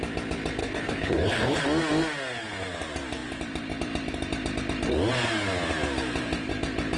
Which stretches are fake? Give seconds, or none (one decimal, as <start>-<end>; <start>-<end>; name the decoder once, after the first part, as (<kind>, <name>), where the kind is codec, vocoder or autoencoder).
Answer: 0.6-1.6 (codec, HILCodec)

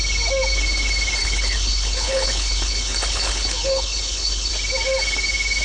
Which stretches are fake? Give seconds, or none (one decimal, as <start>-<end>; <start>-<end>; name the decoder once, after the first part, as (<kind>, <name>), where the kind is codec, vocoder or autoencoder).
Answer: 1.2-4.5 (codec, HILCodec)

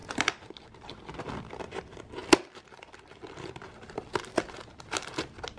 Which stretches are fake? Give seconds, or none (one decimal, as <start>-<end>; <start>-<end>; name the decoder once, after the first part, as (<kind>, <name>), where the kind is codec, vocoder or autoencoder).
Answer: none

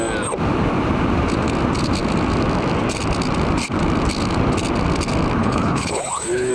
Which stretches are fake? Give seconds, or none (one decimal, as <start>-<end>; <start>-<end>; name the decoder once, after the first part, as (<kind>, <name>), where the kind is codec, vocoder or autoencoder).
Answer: 5.4-6.5 (codec, HILCodec)

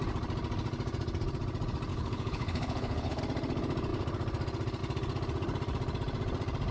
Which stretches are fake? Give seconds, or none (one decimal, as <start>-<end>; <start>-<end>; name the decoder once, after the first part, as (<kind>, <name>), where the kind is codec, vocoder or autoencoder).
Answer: 1.9-3.2 (codec, HILCodec)